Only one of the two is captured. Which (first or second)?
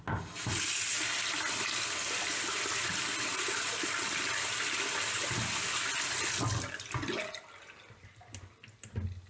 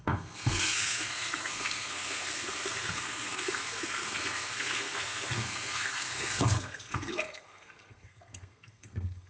first